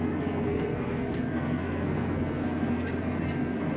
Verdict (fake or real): fake